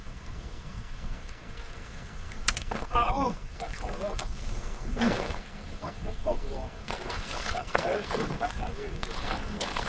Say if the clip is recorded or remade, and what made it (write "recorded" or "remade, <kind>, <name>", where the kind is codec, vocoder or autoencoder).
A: remade, codec, SNAC